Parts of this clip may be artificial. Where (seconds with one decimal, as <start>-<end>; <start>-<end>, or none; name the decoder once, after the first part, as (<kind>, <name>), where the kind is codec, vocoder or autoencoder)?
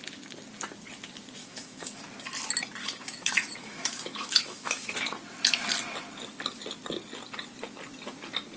1.4-2.0 (autoencoder, DAC-VAE); 2.8-5.0